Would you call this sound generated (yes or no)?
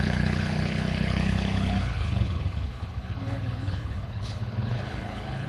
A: yes